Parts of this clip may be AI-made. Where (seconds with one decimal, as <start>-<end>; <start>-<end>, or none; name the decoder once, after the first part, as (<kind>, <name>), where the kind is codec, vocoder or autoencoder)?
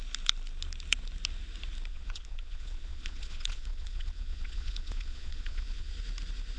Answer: 1.9-5.9 (vocoder, Vocos)